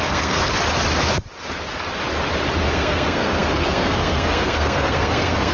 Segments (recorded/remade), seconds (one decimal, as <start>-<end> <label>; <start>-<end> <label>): 0.0-0.4 remade; 0.4-2.7 recorded; 2.7-5.5 remade